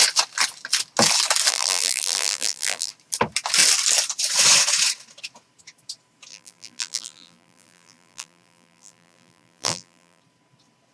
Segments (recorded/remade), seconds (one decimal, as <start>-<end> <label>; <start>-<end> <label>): 0.0-1.5 recorded; 1.5-2.9 remade; 2.9-6.3 recorded; 6.3-10.2 remade; 10.2-10.9 recorded